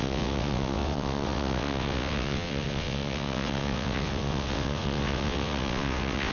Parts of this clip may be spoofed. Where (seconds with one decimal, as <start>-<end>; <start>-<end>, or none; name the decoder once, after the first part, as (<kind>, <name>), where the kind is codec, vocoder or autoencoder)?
0.0-6.3 (vocoder, WaveNeXt)